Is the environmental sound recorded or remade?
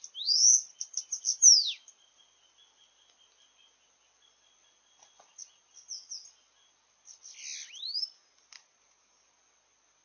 recorded